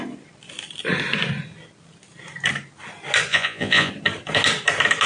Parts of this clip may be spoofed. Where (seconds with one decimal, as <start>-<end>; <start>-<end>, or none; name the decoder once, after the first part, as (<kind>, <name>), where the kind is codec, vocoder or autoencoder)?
3.3-3.9 (vocoder, Vocos)